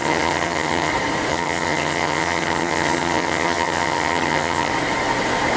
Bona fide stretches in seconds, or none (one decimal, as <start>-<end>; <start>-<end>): 0.9-1.3; 4.7-5.6